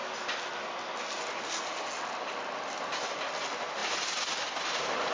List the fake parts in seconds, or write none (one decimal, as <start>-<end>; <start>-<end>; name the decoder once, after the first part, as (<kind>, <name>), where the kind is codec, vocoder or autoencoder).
none